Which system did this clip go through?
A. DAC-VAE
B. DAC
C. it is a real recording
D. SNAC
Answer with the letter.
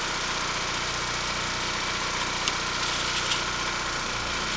C